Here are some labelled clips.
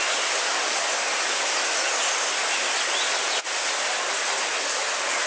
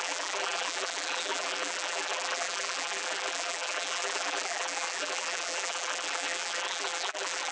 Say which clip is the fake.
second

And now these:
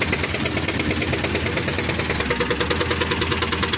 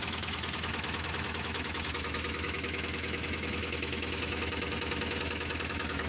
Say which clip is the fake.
second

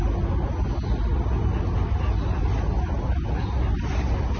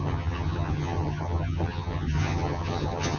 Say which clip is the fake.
second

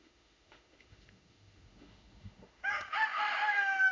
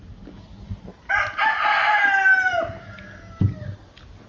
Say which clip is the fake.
first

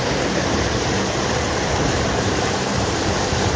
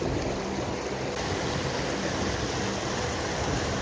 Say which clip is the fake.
first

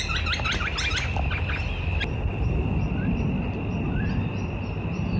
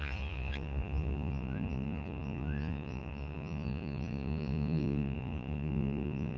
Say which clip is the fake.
second